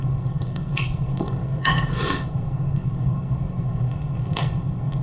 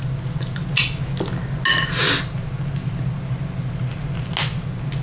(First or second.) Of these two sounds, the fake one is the first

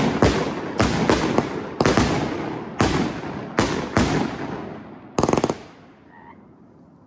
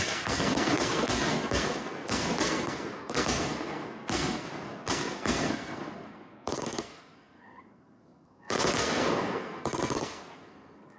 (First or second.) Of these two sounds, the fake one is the second